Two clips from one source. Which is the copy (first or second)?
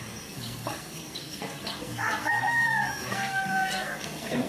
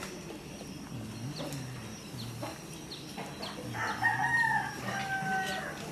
first